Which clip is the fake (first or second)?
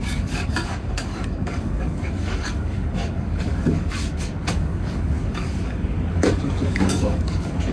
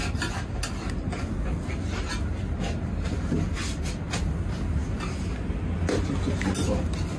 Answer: first